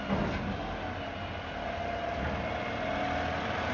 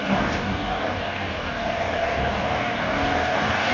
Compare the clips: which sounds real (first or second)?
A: first